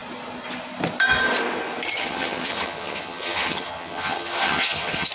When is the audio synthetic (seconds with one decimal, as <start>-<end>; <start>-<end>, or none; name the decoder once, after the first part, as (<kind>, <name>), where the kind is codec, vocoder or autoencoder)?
2.0-5.1 (vocoder, HiFi-GAN)